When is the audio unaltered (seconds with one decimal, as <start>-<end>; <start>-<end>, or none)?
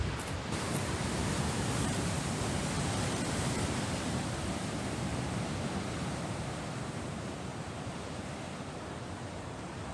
5.1-5.9